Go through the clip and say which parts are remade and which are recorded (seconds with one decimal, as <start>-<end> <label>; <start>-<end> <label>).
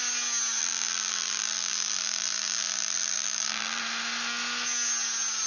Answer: 0.0-0.6 recorded; 0.6-3.8 remade; 3.8-5.5 recorded